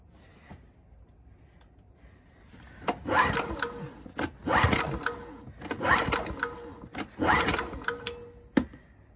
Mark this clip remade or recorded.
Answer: recorded